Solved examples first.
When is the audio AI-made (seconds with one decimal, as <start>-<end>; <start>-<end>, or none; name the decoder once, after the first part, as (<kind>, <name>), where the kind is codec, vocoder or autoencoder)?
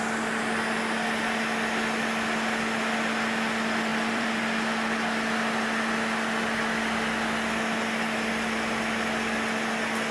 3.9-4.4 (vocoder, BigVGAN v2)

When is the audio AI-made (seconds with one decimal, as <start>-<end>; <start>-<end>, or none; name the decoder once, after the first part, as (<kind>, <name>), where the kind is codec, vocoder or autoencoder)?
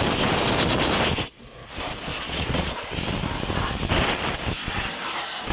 2.1-2.9 (vocoder, Vocos)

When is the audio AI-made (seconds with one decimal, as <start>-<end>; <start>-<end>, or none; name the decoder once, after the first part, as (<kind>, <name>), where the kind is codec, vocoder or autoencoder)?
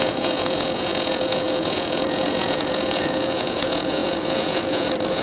0.0-5.2 (vocoder, Vocos)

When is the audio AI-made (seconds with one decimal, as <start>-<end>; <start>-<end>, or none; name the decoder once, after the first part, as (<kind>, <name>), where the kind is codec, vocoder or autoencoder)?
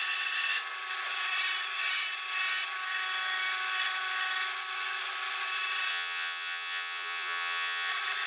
5.9-7.9 (vocoder, Vocos)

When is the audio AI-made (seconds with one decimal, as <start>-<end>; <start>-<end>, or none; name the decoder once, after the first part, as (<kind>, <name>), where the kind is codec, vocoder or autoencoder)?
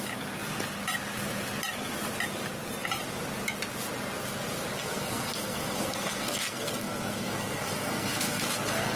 4.8-9.0 (codec, SNAC)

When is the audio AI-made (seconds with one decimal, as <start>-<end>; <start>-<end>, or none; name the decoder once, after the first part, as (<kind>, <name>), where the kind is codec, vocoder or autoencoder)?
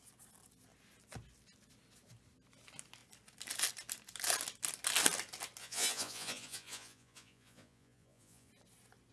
5.6-8.5 (vocoder, Vocos)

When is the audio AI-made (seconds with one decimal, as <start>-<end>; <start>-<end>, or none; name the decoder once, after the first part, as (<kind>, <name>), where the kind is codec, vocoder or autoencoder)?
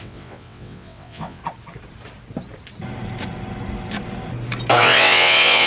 0.0-1.4 (vocoder, WaveNeXt); 4.8-5.7